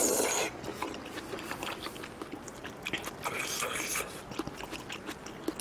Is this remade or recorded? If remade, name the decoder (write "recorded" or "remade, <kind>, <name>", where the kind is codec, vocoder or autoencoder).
recorded